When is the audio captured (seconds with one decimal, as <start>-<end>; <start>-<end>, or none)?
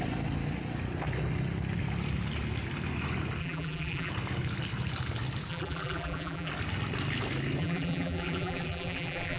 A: 0.0-3.4; 4.1-5.5; 6.5-7.6